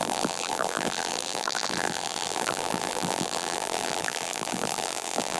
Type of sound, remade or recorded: remade